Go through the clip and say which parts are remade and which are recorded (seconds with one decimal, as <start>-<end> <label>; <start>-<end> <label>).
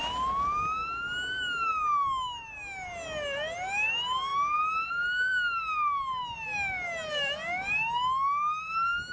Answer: 0.0-9.1 recorded